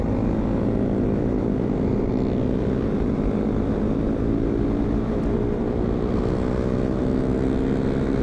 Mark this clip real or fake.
real